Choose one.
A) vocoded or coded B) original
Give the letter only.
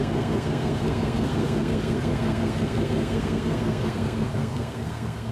A